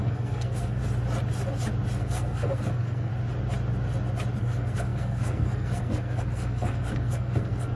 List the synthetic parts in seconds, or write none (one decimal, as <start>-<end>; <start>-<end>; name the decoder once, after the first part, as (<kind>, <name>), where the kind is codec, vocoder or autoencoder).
0.0-0.8 (codec, SNAC); 2.0-3.1; 4.4-7.8